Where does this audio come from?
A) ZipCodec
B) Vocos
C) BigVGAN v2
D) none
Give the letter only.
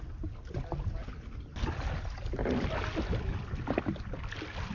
D